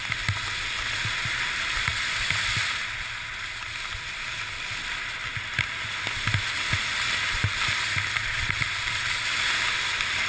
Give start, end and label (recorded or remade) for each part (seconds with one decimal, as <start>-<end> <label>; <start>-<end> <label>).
0.0-10.3 recorded